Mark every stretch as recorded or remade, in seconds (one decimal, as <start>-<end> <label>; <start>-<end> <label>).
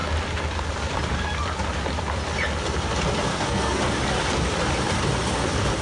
0.0-3.3 recorded; 3.3-3.8 remade; 3.8-5.8 recorded